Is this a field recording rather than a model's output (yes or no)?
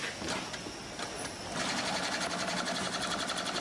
yes